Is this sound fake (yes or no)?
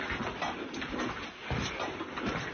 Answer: no